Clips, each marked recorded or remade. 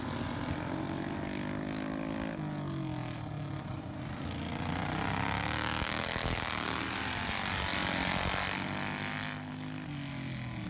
recorded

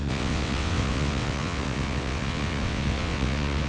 remade